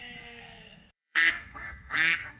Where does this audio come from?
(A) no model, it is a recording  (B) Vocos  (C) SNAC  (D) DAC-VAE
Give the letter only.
C